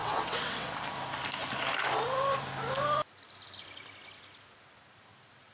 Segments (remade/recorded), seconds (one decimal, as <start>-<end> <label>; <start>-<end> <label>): 0.0-0.7 remade; 0.7-5.5 recorded